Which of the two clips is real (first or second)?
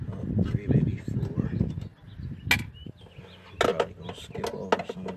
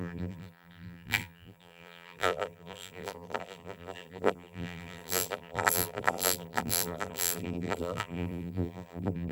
first